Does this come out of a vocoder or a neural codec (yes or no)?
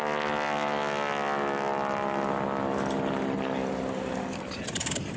no